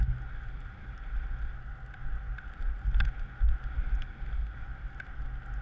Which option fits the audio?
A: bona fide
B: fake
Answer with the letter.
A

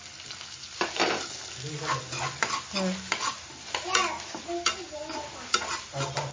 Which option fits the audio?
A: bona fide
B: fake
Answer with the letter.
A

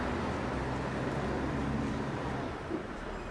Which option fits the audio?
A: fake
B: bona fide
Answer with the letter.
A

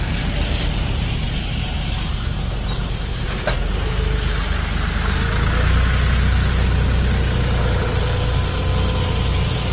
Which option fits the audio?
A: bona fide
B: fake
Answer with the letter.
A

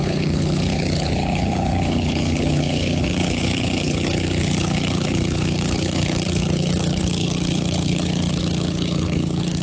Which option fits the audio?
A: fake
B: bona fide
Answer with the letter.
A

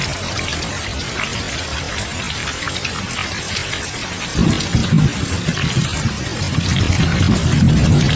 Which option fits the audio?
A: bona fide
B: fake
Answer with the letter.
A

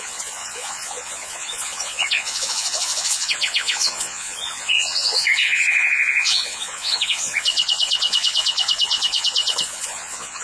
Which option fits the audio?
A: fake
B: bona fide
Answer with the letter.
A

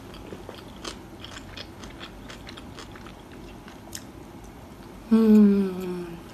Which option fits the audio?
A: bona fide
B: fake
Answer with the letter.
A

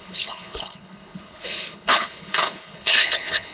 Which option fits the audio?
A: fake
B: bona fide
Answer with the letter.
A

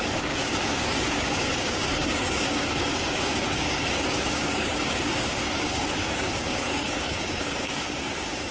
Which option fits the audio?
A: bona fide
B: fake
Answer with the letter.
B